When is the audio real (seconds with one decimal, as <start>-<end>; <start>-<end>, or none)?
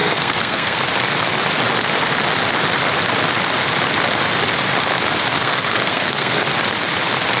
0.8-5.4; 6.4-7.4